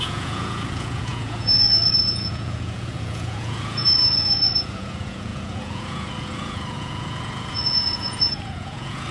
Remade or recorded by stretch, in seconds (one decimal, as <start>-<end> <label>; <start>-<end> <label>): 0.0-9.1 remade